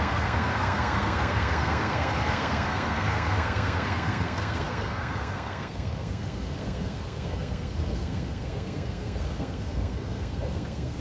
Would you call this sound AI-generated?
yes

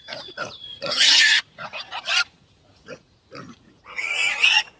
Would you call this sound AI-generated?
yes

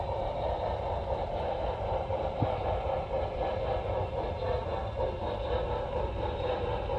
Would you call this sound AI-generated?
yes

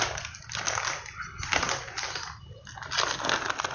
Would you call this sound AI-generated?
no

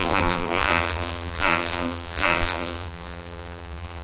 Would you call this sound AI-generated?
yes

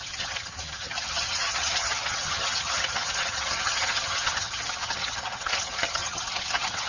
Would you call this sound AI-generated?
yes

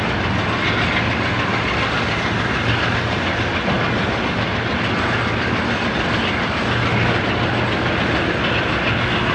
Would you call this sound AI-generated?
no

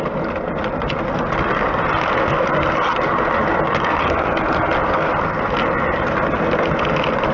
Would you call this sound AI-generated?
no